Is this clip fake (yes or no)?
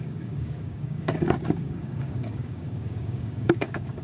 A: yes